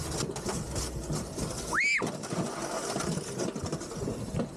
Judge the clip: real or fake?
real